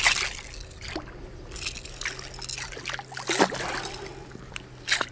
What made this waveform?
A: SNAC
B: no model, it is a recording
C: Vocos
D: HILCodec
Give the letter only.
B